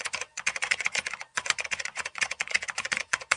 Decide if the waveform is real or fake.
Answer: fake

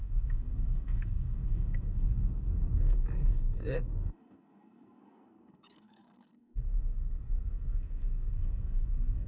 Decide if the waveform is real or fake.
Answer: fake